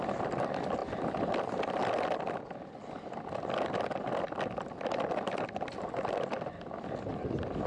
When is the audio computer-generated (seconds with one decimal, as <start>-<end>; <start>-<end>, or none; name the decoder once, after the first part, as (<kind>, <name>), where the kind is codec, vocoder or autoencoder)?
none